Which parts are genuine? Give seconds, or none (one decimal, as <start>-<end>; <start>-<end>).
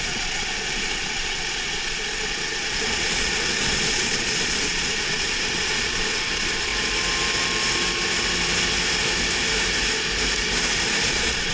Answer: 6.7-11.1